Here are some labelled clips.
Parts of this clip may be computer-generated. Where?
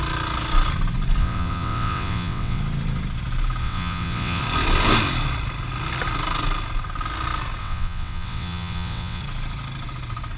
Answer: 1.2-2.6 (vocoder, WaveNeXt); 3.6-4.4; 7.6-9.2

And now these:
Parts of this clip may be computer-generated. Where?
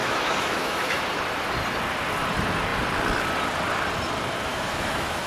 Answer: 0.0-1.0 (autoencoder, DAC-VAE); 4.5-5.3